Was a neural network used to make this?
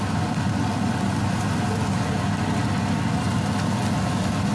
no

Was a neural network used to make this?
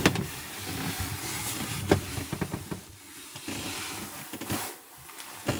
yes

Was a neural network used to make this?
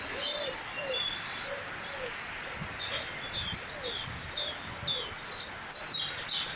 no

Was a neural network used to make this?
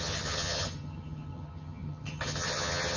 yes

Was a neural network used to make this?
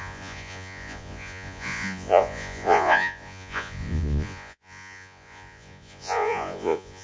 yes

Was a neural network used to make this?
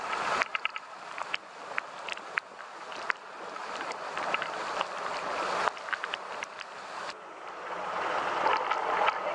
no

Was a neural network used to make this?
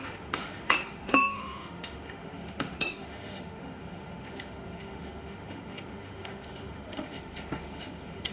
yes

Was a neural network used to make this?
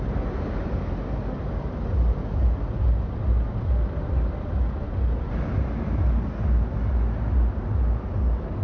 no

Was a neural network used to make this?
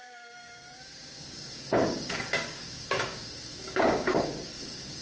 yes